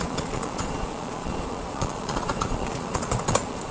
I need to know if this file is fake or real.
fake